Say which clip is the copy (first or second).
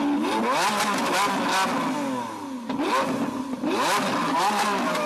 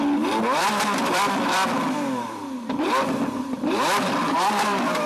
second